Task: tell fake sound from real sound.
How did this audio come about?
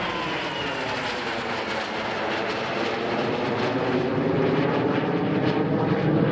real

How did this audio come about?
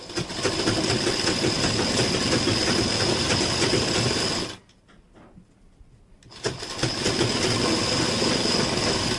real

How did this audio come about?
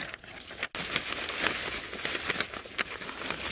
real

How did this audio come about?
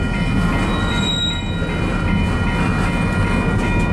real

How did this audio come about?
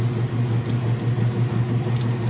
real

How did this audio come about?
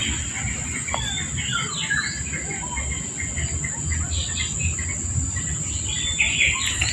real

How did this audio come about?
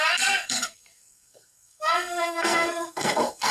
fake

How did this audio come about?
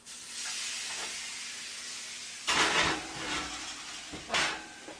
real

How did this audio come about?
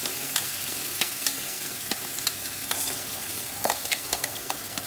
fake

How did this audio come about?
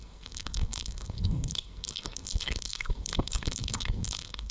fake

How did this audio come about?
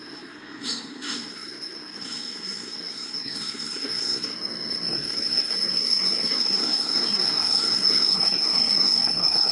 fake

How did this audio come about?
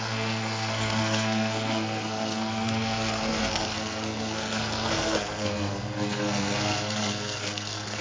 fake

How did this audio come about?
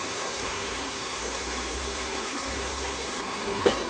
fake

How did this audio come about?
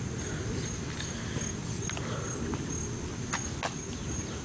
real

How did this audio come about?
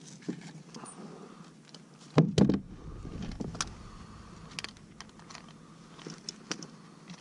real